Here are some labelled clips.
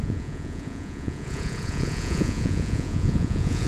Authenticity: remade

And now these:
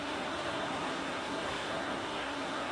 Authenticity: remade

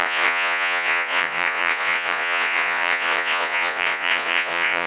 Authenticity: remade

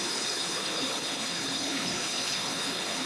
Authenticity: remade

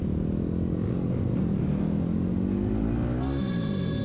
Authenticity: recorded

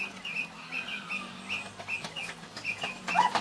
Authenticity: recorded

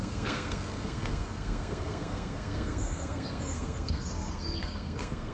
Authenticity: remade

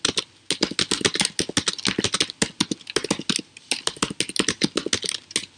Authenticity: recorded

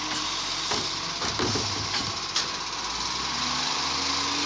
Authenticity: recorded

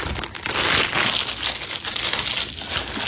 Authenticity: recorded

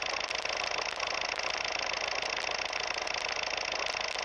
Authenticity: recorded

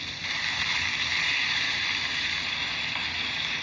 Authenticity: recorded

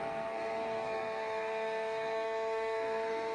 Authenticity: remade